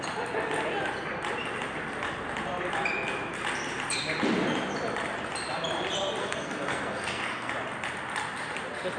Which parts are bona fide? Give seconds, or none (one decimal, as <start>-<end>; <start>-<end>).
0.0-6.2; 7.5-9.0